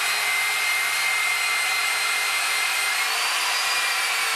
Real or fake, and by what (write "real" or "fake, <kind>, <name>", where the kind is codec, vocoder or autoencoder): real